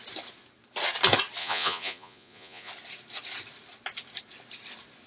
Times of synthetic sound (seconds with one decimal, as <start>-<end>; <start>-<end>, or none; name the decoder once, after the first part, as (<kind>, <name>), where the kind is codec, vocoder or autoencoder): 1.4-2.7 (vocoder, Vocos)